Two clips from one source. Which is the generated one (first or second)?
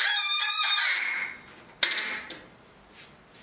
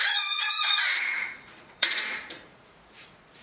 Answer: second